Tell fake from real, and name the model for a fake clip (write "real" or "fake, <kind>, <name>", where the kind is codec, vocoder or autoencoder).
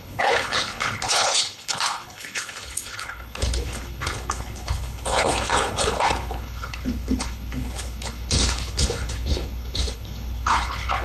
fake, codec, HILCodec